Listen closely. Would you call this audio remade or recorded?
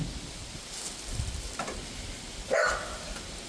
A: recorded